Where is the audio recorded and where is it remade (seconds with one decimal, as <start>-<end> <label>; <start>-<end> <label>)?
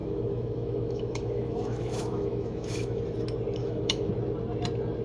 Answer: 0.0-3.0 remade; 3.0-3.6 recorded; 3.6-4.1 remade; 4.1-5.0 recorded